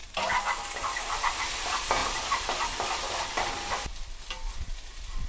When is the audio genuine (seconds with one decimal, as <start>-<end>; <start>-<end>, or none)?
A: 0.0-5.3